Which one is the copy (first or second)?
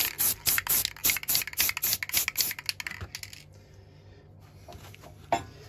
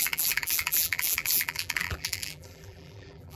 second